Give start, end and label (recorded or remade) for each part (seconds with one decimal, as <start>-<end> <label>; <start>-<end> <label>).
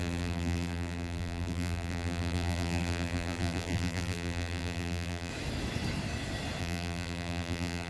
0.0-5.3 remade; 5.3-6.6 recorded; 6.6-7.9 remade